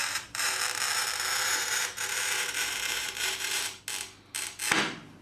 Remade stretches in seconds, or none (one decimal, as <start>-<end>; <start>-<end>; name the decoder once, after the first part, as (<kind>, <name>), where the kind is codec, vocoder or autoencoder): 0.0-0.6 (vocoder, BigVGAN v2); 1.0-3.8